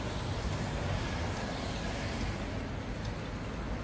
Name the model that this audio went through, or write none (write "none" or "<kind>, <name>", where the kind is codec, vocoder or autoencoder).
none